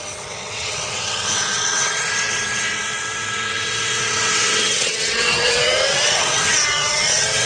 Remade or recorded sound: remade